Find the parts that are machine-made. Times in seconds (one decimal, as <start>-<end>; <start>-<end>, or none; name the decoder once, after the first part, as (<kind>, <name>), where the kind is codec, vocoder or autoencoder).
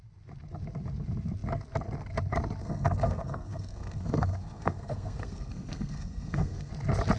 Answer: 2.6-6.7 (codec, SNAC)